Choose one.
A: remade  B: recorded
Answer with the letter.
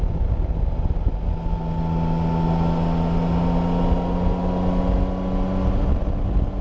B